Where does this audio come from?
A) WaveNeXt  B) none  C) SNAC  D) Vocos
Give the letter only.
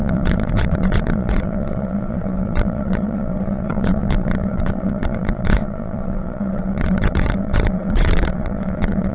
A